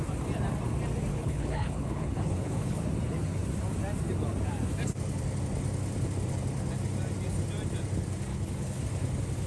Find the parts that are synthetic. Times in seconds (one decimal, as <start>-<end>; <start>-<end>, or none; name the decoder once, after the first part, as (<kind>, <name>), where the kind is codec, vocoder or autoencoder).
1.1-2.8 (codec, HILCodec); 8.3-8.8